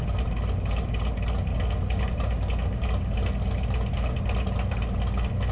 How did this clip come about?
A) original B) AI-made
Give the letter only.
A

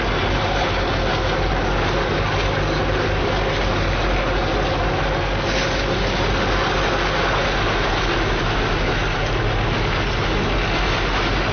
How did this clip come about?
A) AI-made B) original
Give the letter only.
B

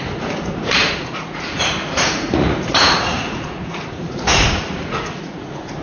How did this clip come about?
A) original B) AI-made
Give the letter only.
B